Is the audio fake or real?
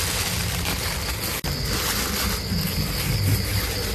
real